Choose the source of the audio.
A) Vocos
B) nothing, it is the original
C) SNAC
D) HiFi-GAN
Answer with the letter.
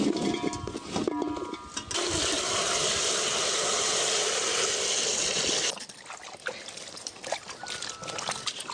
B